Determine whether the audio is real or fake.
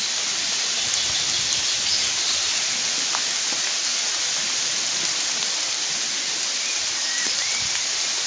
real